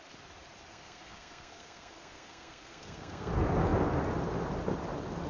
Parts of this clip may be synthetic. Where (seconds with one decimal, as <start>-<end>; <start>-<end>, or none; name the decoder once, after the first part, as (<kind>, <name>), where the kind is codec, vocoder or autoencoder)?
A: 0.7-3.3 (codec, SNAC)